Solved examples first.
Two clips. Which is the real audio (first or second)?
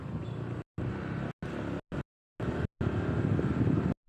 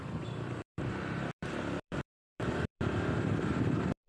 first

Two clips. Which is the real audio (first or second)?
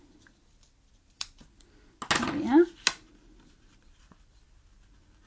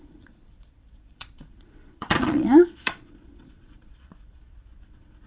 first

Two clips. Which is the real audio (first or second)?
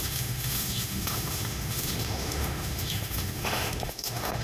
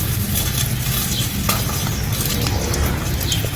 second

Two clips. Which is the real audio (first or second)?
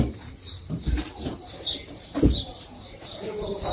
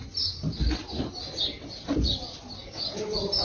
second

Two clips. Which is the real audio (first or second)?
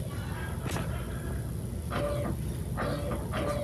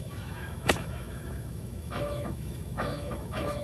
first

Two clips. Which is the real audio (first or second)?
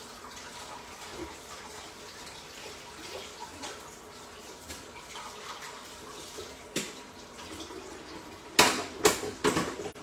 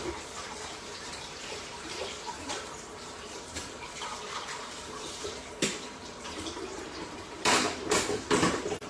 first